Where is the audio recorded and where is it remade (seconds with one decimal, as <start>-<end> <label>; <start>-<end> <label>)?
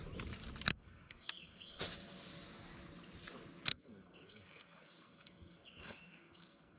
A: 0.0-0.7 recorded; 0.7-1.8 remade; 1.8-3.7 recorded; 3.7-6.8 remade